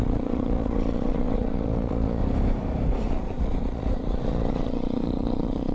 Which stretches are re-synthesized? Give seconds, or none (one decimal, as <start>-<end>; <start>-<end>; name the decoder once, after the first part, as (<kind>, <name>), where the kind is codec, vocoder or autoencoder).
0.0-2.2 (vocoder, Vocos); 3.0-5.7